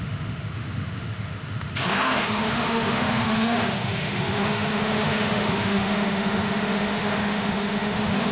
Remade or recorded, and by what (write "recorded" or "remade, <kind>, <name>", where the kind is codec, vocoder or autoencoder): remade, autoencoder, DAC-VAE